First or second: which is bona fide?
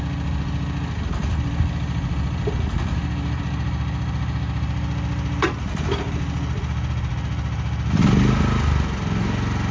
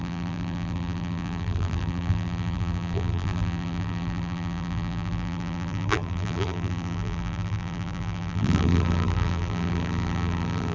first